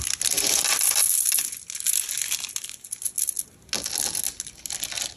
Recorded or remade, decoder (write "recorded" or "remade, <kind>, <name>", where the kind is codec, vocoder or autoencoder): recorded